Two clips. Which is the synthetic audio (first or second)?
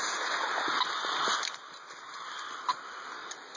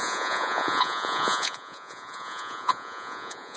second